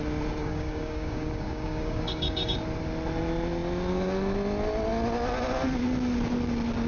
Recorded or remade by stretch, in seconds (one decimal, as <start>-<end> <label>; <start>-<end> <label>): 0.0-0.4 recorded; 0.4-2.6 remade; 2.6-6.9 recorded